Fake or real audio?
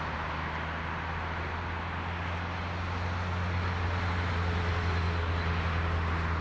real